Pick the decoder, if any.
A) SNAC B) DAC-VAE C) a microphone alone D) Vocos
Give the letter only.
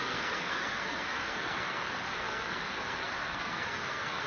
A